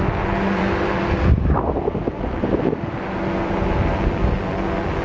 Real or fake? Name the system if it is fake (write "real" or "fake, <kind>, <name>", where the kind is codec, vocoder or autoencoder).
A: fake, vocoder, BigVGAN v2